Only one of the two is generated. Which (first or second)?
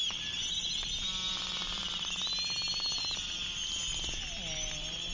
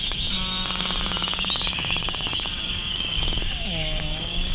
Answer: second